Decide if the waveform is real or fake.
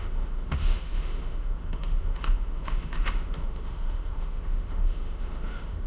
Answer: fake